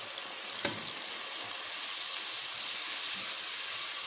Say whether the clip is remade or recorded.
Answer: recorded